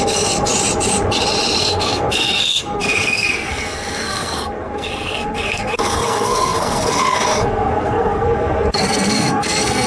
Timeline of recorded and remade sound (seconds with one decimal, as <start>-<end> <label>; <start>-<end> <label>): 0.0-0.5 remade; 0.5-1.6 recorded; 1.6-9.9 remade